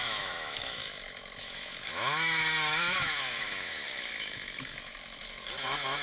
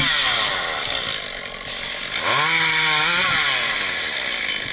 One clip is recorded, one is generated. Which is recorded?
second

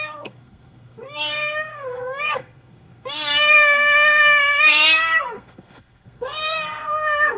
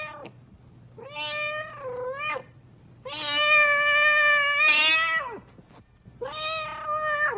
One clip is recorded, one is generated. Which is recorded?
second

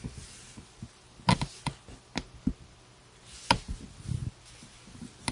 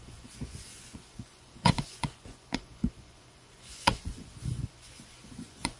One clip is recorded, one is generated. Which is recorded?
first